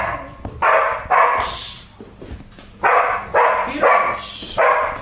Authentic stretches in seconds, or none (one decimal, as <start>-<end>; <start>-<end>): 0.0-5.0